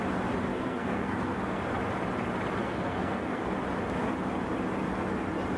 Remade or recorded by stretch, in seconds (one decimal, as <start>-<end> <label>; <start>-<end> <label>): 0.0-0.5 recorded; 0.5-1.6 remade; 1.6-2.6 recorded; 2.6-3.4 remade; 3.4-5.6 recorded